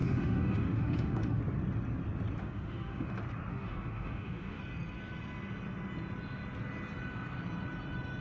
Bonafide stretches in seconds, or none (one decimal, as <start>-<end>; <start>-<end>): 1.4-2.4; 3.1-3.5; 4.6-8.2